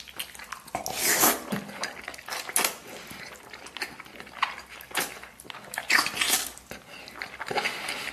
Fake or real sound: real